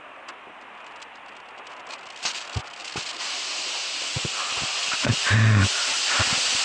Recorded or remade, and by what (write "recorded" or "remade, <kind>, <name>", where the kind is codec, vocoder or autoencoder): recorded